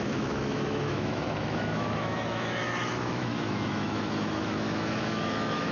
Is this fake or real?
fake